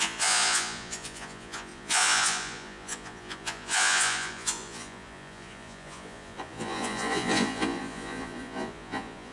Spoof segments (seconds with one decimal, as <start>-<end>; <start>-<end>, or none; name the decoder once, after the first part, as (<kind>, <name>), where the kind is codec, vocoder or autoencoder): 0.0-9.3 (vocoder, Vocos)